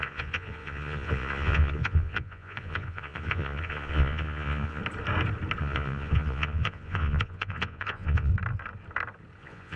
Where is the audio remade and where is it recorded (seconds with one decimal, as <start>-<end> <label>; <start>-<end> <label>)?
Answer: 0.0-4.8 remade; 4.8-5.6 recorded; 5.6-8.3 remade; 8.3-9.4 recorded; 9.4-9.8 remade